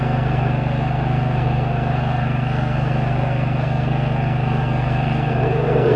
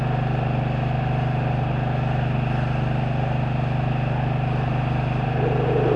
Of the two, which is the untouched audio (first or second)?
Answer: second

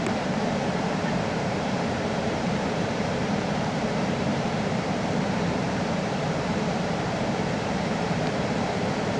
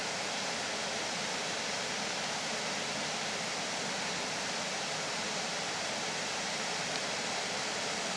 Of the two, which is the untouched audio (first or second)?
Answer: second